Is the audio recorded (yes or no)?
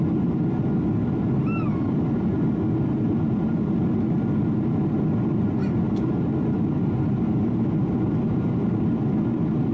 yes